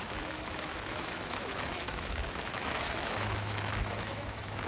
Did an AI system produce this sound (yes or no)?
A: yes